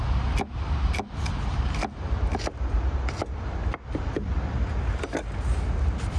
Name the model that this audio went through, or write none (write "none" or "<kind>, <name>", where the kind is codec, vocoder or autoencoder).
none